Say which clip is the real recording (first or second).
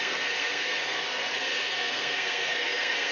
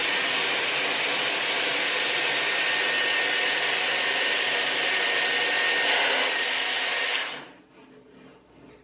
second